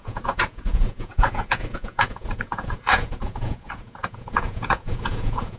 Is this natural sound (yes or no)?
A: no